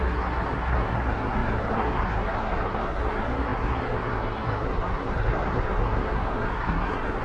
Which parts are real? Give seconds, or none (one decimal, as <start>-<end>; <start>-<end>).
none

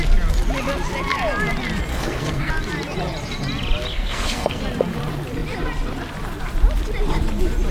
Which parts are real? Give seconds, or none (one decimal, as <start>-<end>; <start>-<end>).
0.0-1.9; 2.5-3.9; 4.6-7.7